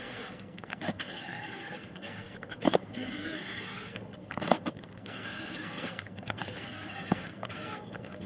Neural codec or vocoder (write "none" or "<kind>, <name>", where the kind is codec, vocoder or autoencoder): codec, SNAC